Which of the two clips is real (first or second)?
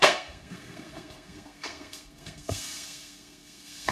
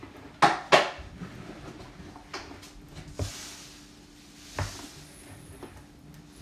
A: second